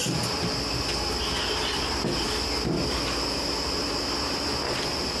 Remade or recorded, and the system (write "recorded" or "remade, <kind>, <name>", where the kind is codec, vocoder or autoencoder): recorded